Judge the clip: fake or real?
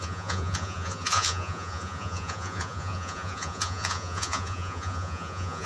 fake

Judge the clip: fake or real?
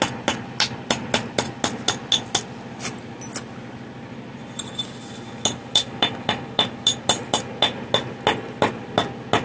real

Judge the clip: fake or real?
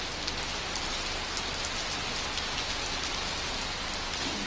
real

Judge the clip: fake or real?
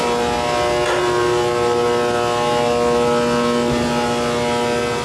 real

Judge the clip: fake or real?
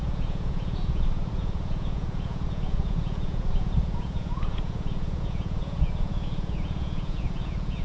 fake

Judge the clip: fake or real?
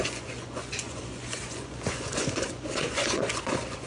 fake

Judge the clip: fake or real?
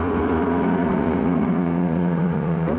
fake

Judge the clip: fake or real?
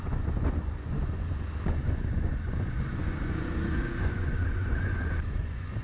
fake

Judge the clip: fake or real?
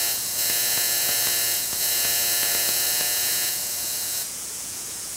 fake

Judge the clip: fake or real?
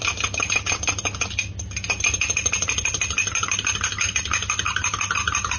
real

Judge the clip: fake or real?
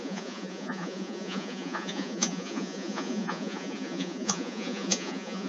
fake